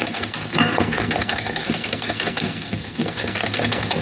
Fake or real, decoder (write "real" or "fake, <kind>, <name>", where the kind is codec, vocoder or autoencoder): fake, codec, SNAC